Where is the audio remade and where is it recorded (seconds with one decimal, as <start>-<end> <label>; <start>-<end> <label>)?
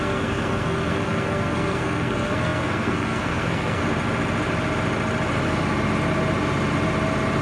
0.0-3.8 remade; 3.8-7.4 recorded